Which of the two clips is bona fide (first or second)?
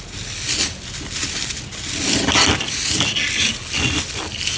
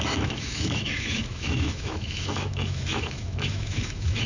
first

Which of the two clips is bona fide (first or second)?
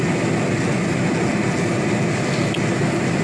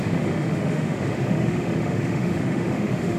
first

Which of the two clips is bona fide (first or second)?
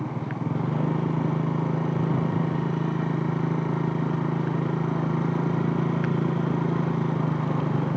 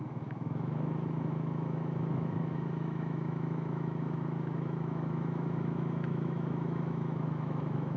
first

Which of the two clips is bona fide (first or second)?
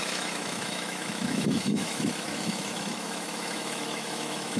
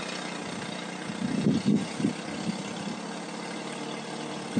second